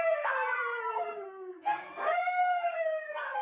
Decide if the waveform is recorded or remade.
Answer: remade